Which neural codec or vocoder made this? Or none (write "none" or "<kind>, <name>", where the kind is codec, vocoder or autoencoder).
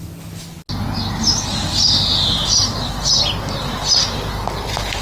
none